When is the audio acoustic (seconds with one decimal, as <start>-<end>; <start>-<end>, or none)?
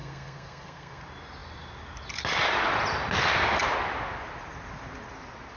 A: 1.0-5.6